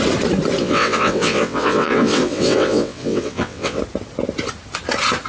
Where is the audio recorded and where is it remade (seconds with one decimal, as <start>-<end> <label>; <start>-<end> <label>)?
0.0-0.6 recorded; 0.6-3.8 remade; 3.8-5.3 recorded